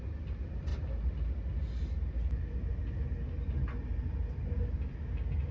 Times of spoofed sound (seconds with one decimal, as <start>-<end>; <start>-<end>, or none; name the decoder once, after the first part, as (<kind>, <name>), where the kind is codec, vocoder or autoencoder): none